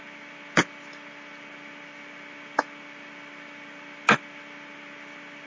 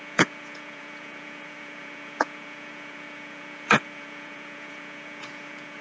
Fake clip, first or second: second